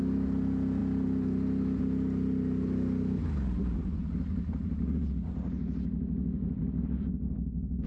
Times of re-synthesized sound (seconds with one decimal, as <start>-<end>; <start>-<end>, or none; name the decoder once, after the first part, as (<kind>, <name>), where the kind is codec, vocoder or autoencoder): none